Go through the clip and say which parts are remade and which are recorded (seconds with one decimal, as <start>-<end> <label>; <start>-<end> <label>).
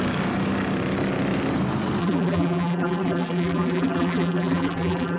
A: 0.0-2.0 recorded; 2.0-5.2 remade